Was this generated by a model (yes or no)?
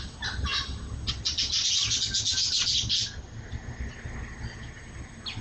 no